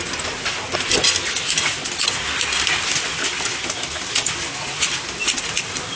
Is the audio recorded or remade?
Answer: recorded